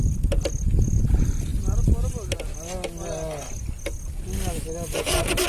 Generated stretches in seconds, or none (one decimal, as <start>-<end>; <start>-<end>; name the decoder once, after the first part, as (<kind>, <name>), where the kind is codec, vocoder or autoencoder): none

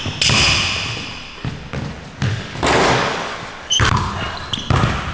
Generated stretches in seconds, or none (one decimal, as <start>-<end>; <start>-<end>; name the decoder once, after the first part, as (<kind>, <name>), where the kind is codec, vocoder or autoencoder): 2.3-4.1 (codec, DAC)

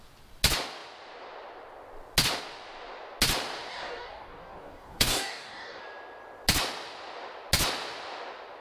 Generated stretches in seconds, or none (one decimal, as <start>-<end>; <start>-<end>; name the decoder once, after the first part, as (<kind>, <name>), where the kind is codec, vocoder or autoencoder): 3.7-5.8 (codec, DAC)

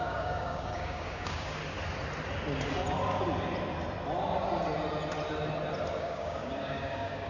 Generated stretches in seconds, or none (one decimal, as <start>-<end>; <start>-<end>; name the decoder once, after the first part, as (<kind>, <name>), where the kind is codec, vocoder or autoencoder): 0.0-1.6 (codec, DAC); 6.0-7.3

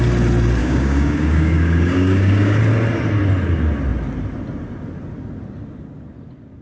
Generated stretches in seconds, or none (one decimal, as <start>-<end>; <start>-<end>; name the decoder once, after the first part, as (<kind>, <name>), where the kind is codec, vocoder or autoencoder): 0.6-2.6 (codec, DAC)